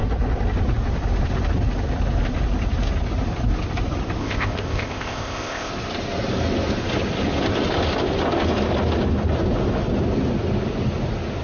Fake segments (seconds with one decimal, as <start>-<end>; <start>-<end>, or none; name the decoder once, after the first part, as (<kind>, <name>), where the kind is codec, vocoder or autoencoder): 4.2-5.7 (codec, ZipCodec)